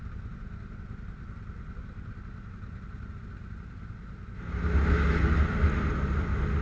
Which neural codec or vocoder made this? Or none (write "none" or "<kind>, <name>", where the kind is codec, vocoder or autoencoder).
none